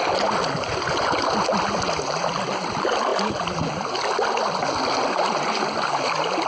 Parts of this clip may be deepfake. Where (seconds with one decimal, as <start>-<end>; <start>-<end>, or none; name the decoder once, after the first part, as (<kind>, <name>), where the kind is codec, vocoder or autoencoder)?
3.1-5.6 (vocoder, BigVGAN v2)